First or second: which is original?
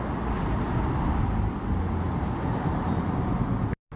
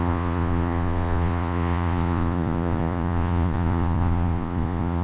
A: first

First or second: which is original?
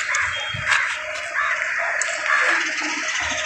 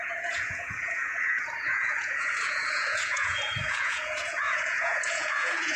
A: first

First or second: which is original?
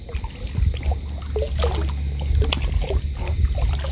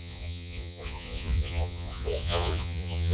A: first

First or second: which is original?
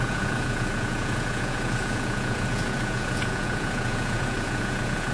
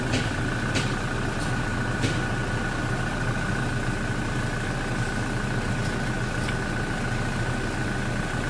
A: second